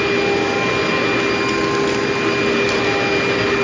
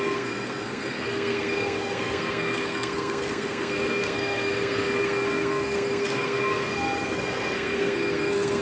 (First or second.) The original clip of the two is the first